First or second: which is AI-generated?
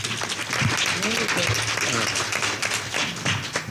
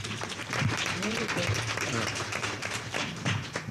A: second